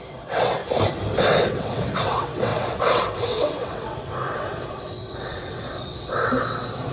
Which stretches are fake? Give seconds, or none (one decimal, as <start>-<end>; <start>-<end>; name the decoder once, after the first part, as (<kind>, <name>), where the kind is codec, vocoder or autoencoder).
0.0-0.6 (vocoder, WaveNeXt); 1.2-6.9